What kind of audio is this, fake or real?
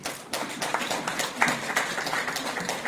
real